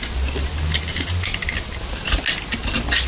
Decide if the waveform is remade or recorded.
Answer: recorded